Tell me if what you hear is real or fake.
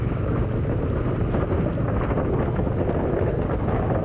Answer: real